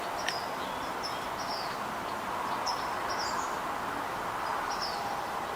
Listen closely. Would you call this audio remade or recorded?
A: recorded